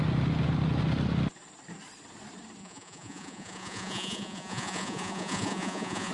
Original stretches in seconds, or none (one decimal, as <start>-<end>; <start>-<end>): 0.0-2.6